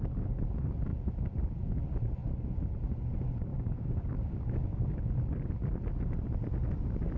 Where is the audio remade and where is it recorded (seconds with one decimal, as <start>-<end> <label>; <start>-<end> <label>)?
0.0-3.5 recorded; 3.5-5.1 remade; 5.1-7.2 recorded